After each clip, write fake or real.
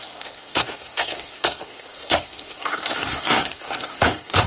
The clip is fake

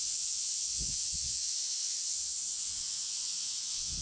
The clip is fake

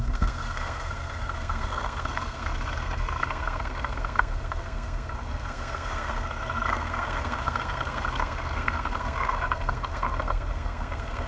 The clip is fake